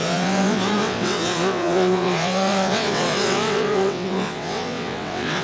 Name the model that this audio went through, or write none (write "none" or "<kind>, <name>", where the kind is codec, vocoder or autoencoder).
vocoder, WaveNeXt